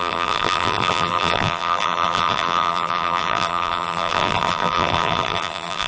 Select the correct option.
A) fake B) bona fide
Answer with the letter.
A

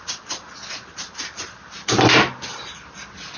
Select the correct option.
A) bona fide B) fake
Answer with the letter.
A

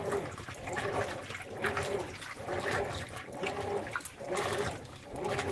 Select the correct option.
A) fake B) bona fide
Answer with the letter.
A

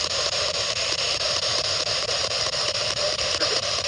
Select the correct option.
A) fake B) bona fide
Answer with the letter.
A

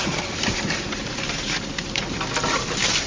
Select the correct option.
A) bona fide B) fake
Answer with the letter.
B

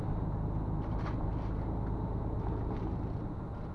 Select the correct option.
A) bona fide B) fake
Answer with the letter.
A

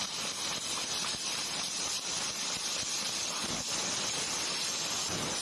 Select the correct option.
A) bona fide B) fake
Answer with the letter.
A